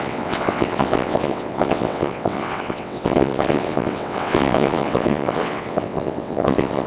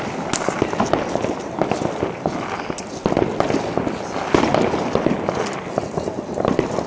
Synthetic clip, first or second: first